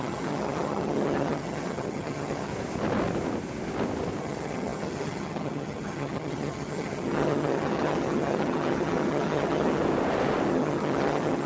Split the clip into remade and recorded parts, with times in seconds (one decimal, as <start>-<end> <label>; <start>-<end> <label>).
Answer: 0.0-2.5 remade; 2.5-4.2 recorded; 4.2-9.8 remade; 9.8-10.5 recorded; 10.5-11.5 remade